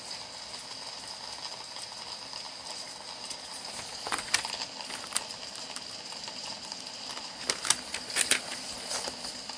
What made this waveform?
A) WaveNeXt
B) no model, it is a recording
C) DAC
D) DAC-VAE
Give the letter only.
B